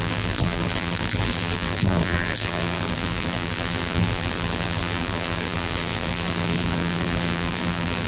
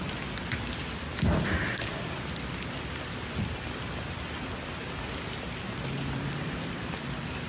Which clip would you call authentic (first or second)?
second